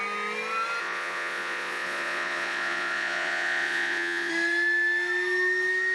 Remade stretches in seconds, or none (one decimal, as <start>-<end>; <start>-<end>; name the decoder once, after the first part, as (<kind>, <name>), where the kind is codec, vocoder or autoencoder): 0.8-4.3 (vocoder, Vocos)